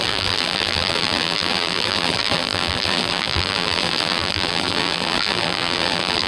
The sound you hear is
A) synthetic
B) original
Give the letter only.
A